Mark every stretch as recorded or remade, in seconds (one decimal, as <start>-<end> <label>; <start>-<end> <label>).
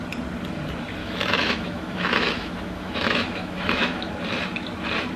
0.0-1.0 recorded; 1.0-4.1 remade; 4.1-5.2 recorded